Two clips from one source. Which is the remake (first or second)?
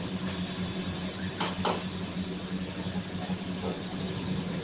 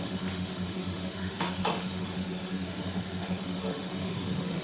second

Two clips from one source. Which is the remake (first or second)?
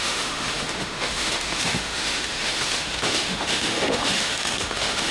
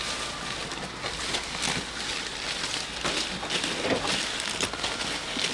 first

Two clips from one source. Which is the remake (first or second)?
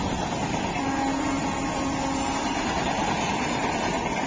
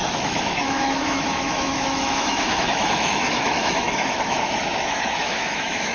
second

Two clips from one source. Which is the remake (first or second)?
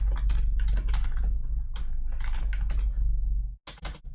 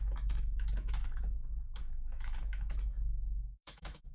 second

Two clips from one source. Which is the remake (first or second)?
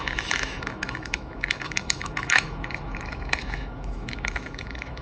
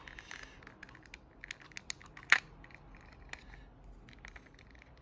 first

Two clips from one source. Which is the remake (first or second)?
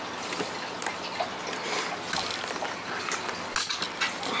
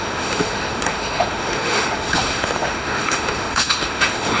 second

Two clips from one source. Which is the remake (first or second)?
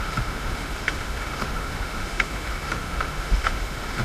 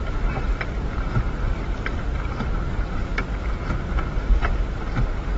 first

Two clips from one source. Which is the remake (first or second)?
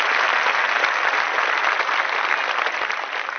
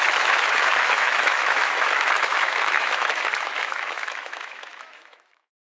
second